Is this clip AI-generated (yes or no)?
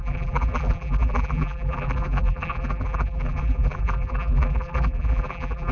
yes